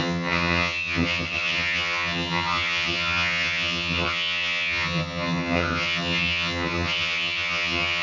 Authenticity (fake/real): fake